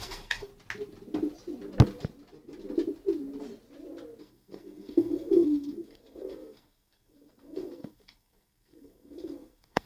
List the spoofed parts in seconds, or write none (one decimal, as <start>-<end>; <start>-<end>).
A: 0.0-0.5; 4.2-9.9